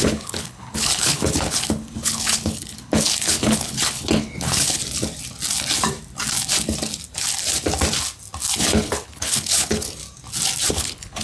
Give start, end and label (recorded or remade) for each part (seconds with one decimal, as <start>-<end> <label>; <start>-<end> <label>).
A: 0.0-4.8 remade; 4.8-8.6 recorded; 8.6-10.0 remade; 10.0-10.7 recorded; 10.7-11.2 remade